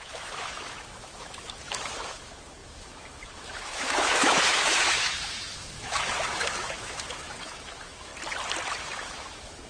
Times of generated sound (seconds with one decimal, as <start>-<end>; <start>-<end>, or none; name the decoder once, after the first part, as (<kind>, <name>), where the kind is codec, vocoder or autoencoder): 0.0-8.1 (autoencoder, DAC-VAE); 8.7-9.7